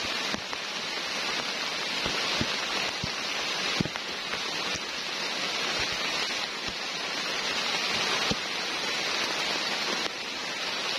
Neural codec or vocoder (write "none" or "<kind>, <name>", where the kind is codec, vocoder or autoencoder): none